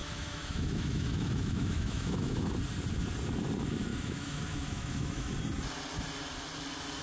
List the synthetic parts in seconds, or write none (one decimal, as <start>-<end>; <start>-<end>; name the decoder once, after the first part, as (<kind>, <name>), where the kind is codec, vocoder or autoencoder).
0.0-2.5 (autoencoder, DAC-VAE); 3.9-5.3